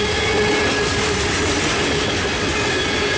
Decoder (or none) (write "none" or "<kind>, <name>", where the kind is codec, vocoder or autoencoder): none